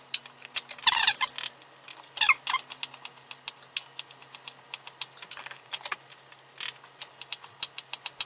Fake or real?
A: real